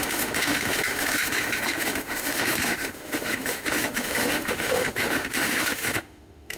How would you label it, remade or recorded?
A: remade